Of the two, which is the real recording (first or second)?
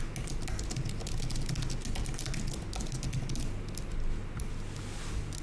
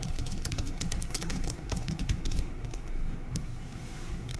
first